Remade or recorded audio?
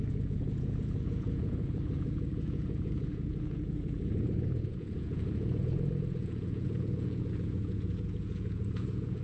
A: remade